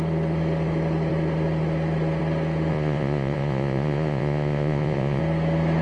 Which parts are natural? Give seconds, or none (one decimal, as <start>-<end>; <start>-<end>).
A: 0.0-2.7; 5.2-5.8